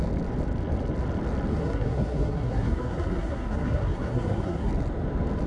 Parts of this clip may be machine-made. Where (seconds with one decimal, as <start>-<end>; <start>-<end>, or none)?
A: 1.5-4.7